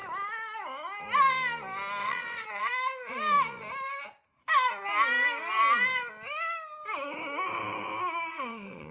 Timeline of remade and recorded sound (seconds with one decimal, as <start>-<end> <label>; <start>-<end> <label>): 0.0-2.0 recorded; 2.0-2.7 remade; 2.7-8.3 recorded; 8.3-8.9 remade